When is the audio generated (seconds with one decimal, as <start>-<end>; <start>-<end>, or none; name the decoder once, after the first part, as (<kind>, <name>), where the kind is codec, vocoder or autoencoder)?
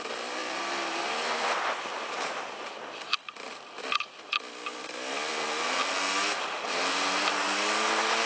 none